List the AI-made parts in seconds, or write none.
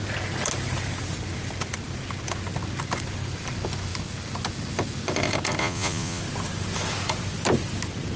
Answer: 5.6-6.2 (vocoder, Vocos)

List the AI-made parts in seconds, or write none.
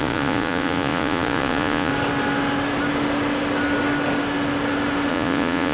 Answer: 0.0-1.9 (vocoder, Vocos); 5.1-5.7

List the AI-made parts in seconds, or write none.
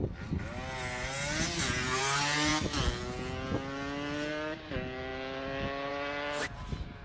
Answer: none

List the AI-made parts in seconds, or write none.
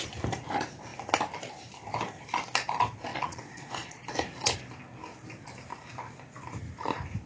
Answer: 3.1-4.1 (vocoder, Vocos)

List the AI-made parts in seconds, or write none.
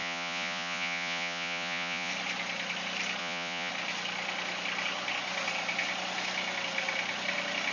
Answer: 0.0-2.1 (vocoder, Vocos); 3.2-3.7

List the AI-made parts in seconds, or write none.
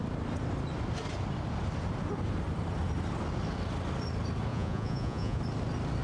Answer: 4.5-5.4 (vocoder, Vocos)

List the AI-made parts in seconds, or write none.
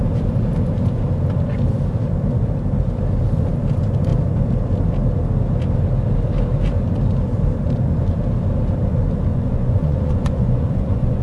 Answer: 9.3-11.2 (vocoder, Vocos)